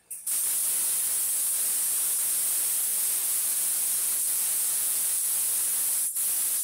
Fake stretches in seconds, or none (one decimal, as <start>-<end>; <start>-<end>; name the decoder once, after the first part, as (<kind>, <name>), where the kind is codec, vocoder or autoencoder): 2.9-5.5 (vocoder, Vocos)